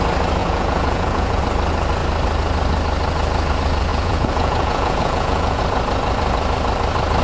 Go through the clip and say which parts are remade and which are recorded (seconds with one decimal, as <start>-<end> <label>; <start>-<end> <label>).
0.0-0.4 recorded; 0.4-1.4 remade; 1.4-3.9 recorded; 3.9-5.6 remade; 5.6-7.2 recorded